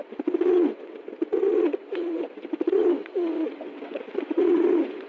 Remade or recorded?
remade